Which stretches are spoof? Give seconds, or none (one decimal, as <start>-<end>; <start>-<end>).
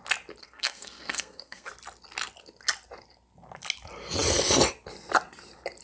0.4-1.7